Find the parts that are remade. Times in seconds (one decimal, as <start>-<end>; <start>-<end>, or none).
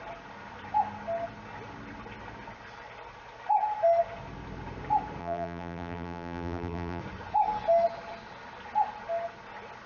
5.2-7.0